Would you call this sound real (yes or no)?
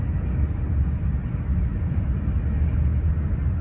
yes